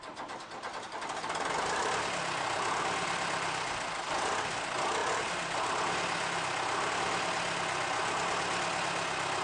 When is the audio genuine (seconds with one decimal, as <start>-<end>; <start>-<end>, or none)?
0.0-9.4

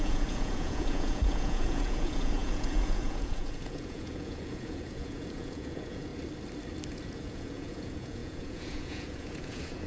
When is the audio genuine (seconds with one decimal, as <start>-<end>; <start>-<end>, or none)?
6.1-6.9